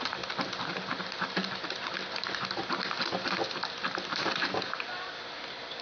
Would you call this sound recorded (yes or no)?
yes